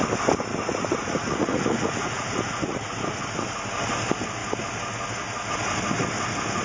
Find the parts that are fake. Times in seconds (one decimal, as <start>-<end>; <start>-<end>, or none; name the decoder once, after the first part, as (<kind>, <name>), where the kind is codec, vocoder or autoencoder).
0.5-2.9 (vocoder, Vocos)